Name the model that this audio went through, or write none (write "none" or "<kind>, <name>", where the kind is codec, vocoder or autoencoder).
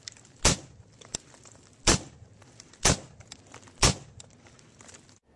none